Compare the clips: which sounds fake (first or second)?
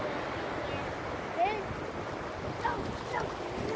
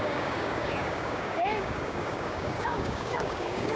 second